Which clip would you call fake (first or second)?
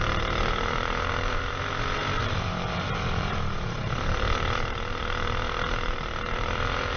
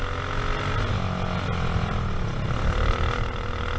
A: first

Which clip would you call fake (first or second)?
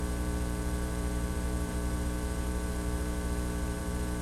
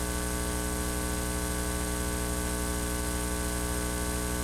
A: first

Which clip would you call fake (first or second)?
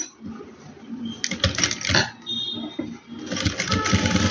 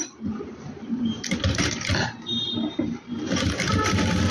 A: second